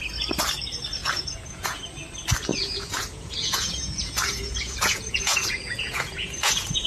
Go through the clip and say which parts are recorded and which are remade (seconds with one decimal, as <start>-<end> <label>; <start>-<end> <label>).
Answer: 0.0-1.0 recorded; 1.0-1.8 remade; 1.8-2.5 recorded; 2.5-6.9 remade